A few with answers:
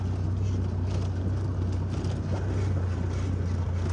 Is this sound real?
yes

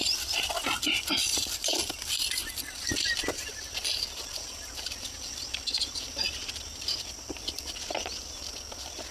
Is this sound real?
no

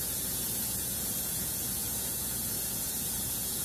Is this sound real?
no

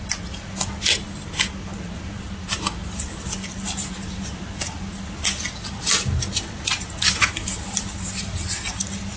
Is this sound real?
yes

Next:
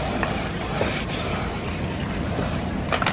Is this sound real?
yes